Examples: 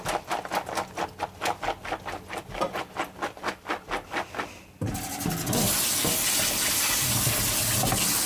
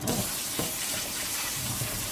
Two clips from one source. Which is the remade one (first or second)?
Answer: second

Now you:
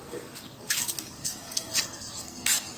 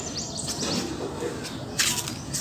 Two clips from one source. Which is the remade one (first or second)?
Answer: first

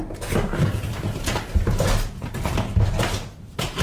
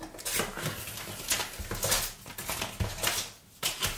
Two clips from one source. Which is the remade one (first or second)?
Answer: first